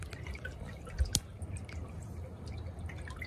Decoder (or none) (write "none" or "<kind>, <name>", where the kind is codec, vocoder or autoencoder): none